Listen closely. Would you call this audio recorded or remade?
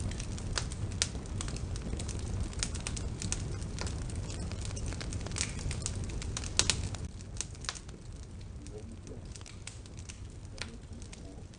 recorded